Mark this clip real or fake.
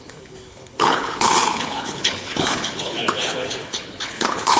fake